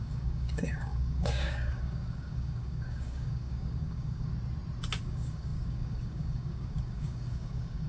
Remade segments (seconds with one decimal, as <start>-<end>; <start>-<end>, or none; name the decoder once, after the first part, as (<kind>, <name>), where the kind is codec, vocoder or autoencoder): 0.0-4.3 (codec, DAC); 5.0-7.9

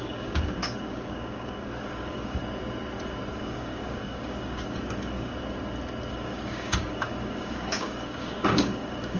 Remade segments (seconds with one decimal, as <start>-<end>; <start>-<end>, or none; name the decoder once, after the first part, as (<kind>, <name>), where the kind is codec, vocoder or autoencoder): 0.0-2.4 (codec, DAC); 3.3-5.3; 6.1-9.2

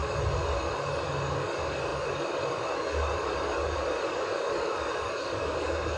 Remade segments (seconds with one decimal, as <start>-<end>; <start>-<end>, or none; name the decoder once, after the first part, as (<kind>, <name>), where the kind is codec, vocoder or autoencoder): 0.0-6.0 (codec, DAC)

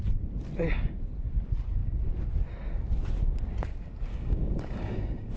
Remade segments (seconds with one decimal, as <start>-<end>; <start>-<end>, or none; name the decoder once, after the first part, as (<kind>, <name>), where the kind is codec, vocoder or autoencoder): 4.1-5.4 (codec, DAC)

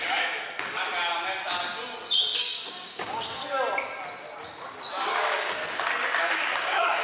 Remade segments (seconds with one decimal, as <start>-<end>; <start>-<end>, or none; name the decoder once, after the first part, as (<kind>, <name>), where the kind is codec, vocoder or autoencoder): 0.0-0.9 (codec, DAC); 2.4-3.4; 5.1-5.6; 6.2-7.0